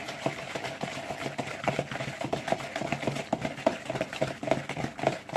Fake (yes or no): no